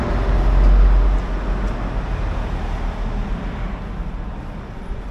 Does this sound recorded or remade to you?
recorded